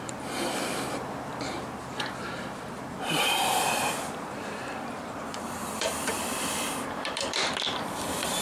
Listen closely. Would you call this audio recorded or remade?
remade